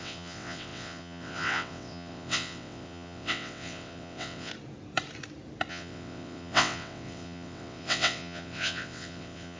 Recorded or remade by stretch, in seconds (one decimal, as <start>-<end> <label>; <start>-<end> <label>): 0.0-4.5 remade; 4.5-5.7 recorded; 5.7-9.6 remade